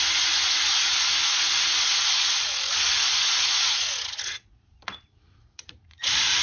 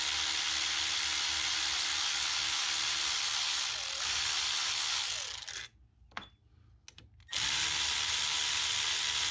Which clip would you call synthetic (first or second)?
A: first